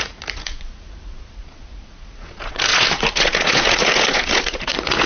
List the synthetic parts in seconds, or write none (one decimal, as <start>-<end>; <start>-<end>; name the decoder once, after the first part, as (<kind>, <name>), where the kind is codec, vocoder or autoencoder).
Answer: 0.0-5.1 (vocoder, Vocos)